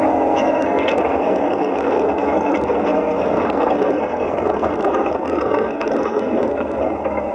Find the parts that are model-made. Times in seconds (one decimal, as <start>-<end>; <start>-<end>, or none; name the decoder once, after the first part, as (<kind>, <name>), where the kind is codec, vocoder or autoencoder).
0.0-7.3 (codec, SNAC)